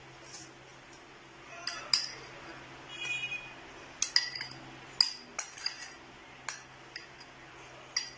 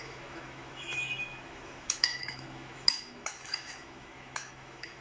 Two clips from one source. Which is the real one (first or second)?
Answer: first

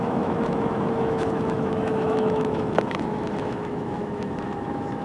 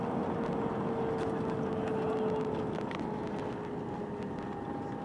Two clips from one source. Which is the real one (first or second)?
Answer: second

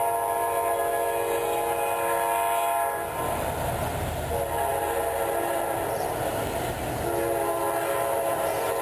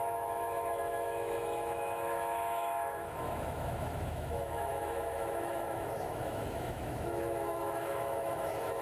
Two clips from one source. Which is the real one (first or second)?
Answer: first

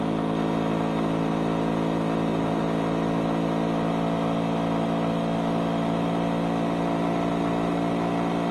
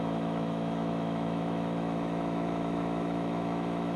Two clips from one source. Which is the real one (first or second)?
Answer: first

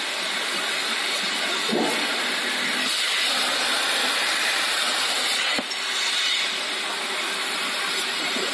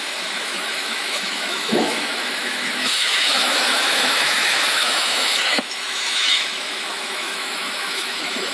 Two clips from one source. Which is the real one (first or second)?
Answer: first